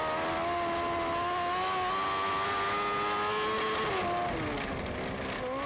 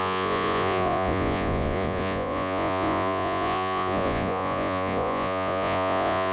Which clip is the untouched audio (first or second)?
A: first